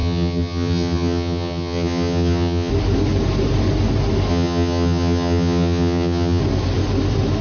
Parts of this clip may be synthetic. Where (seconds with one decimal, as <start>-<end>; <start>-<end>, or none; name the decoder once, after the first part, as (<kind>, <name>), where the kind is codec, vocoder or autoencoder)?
0.0-2.7 (vocoder, HiFi-GAN); 4.3-6.4